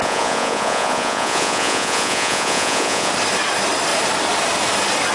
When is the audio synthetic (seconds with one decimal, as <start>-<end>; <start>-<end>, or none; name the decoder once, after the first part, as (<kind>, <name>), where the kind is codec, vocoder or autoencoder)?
0.0-3.1 (vocoder, Vocos)